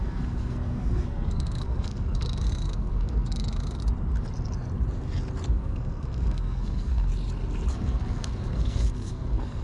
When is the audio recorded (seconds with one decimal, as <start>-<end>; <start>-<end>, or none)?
3.8-5.5; 7.1-7.7